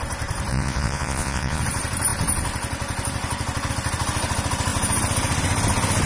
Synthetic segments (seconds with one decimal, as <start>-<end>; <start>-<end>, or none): 0.5-1.6